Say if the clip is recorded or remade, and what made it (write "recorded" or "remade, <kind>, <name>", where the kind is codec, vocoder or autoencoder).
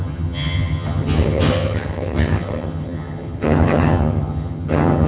remade, vocoder, HiFi-GAN